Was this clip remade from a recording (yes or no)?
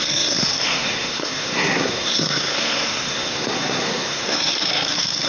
yes